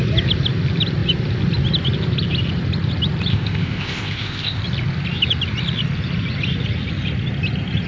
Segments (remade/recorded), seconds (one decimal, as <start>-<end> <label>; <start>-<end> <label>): 0.0-3.3 recorded; 3.3-4.6 remade; 4.6-7.9 recorded